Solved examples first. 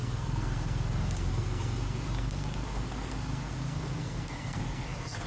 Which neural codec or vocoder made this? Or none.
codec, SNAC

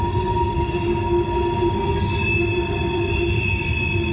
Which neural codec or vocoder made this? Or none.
none